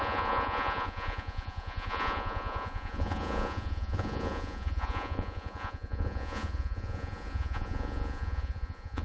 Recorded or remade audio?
remade